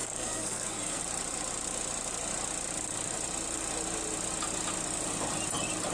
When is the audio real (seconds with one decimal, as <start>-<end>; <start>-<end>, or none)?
1.0-5.9